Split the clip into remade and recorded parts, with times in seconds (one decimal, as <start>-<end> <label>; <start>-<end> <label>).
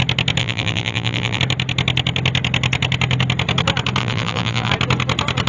0.0-0.4 recorded; 0.4-1.4 remade; 1.4-4.0 recorded; 4.0-4.7 remade; 4.7-5.5 recorded